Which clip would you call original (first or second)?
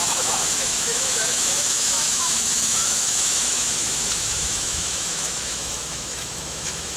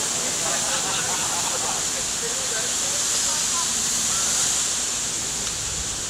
second